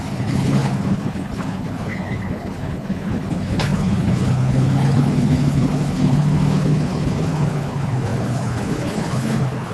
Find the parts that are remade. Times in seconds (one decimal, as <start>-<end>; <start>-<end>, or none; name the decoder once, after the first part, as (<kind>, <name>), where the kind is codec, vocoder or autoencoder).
0.0-9.7 (codec, HILCodec)